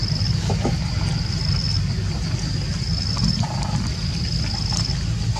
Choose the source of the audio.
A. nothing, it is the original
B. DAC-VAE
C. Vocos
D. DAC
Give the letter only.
A